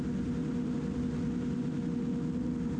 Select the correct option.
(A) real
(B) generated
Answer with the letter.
A